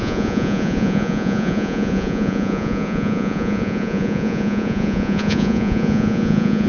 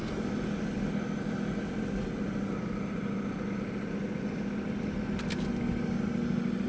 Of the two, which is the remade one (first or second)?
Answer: first